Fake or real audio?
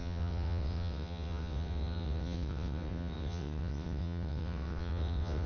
fake